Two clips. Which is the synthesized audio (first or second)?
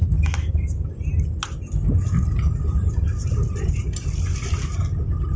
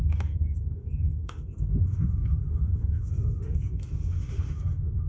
second